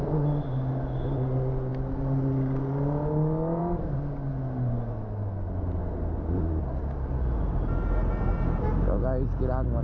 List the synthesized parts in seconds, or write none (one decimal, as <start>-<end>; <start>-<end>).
none